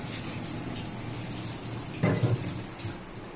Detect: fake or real real